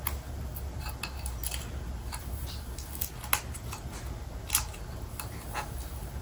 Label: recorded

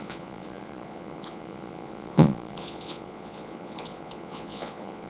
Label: remade